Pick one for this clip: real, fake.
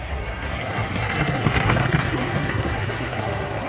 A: fake